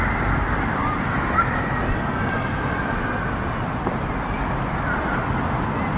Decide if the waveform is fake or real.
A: real